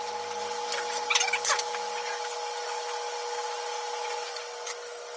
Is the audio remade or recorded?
recorded